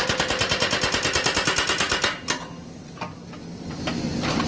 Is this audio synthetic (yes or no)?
no